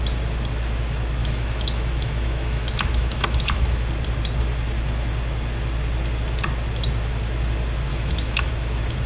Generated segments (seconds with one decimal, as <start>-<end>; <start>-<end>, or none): 1.2-3.8; 7.9-8.5